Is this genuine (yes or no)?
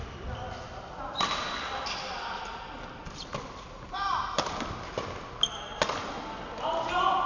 yes